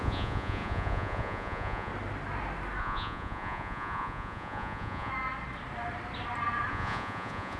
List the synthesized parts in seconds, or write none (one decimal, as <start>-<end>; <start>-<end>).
0.0-1.9; 2.8-5.1; 6.7-7.6